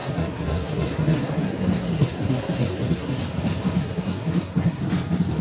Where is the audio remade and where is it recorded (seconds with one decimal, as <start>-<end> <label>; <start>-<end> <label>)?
0.0-3.2 remade; 3.2-3.8 recorded; 3.8-4.8 remade; 4.8-5.4 recorded